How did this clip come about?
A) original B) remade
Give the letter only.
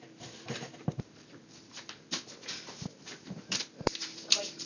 B